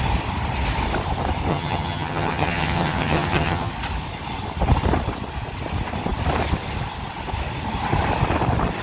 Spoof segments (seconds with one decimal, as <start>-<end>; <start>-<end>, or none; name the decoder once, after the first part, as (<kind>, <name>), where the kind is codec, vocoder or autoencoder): 1.5-3.7 (vocoder, HiFi-GAN)